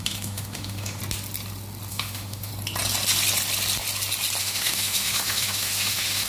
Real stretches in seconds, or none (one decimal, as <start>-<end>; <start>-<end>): 1.0-1.9; 2.5-4.4